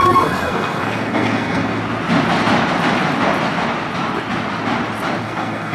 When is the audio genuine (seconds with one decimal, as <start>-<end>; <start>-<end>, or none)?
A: 1.8-5.2